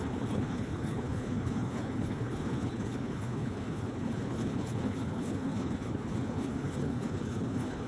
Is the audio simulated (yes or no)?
yes